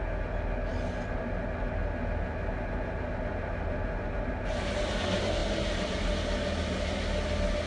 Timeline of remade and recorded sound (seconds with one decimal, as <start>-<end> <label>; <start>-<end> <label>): 0.0-7.7 recorded